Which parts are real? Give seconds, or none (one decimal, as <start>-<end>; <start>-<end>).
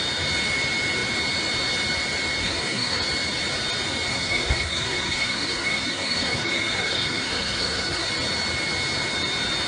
0.0-2.4; 3.0-4.1; 8.1-9.7